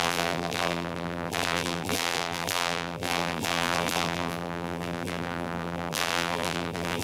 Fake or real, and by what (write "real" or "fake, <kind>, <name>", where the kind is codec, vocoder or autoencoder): fake, vocoder, BigVGAN v2